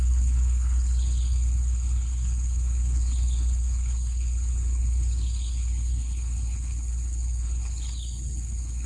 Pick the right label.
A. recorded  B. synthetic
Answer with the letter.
B